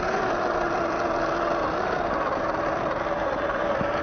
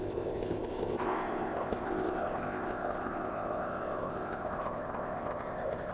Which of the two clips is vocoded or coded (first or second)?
second